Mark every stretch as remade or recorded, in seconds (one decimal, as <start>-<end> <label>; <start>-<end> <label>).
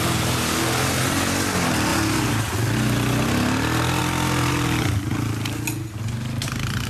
0.0-6.9 recorded